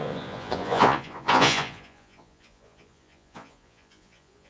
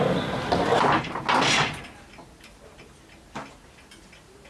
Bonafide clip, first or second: second